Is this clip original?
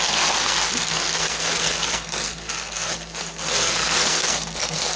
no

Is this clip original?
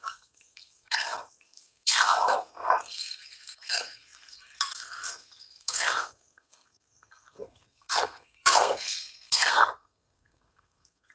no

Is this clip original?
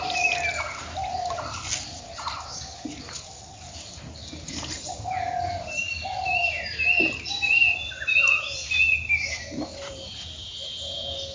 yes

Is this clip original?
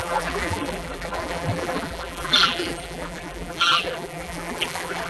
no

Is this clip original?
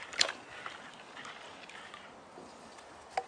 yes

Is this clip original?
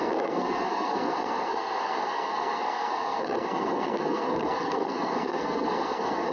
no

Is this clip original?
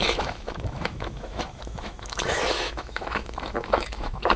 no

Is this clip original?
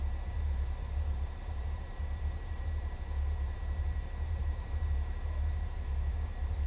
no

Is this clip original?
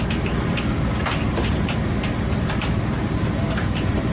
yes